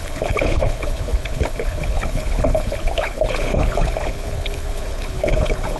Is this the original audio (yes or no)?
no